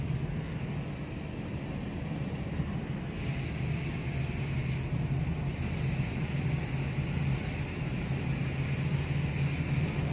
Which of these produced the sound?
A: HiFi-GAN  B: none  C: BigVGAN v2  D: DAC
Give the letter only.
B